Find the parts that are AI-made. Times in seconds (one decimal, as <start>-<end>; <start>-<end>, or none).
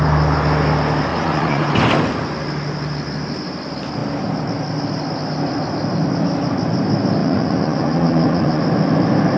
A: 1.1-1.7; 7.2-8.6